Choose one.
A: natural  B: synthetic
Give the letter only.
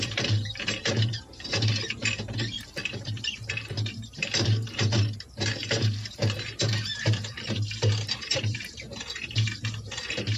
B